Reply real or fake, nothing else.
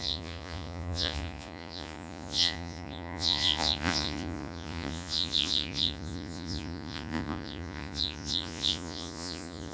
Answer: fake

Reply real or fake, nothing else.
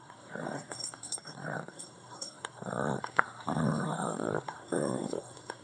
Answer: fake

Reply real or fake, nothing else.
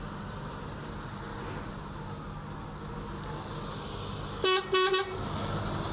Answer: real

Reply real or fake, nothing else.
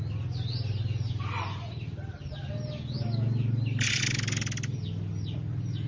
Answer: real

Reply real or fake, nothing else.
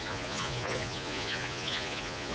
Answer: fake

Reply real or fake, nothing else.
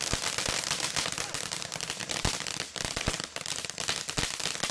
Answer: real